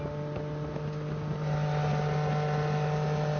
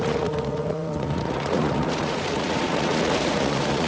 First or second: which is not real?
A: second